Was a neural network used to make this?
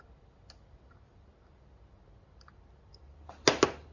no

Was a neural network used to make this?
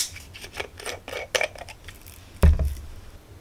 no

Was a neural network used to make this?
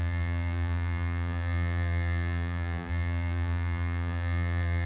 yes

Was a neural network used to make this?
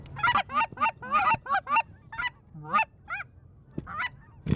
no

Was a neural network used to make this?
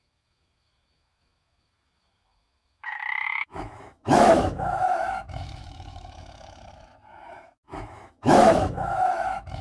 yes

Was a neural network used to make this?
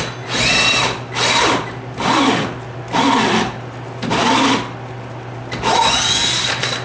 no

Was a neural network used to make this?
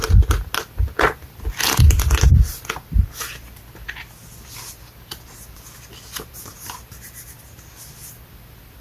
no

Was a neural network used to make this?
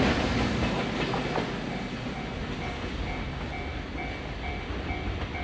no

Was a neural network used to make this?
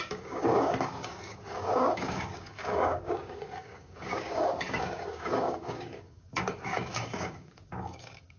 yes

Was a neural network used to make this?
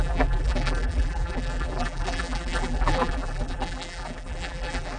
yes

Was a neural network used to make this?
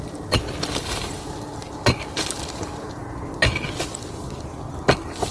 no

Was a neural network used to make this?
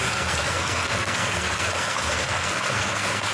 yes